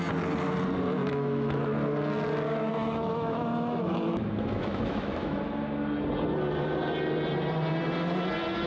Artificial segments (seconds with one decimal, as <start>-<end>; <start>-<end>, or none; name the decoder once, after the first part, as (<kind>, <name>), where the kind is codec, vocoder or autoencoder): 1.0-1.6 (autoencoder, DAC-VAE); 2.7-5.4